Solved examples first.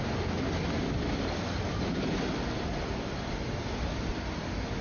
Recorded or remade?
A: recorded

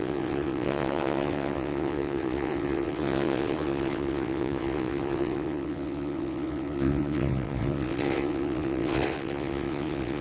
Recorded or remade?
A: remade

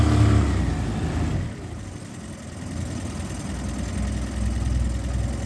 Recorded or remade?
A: recorded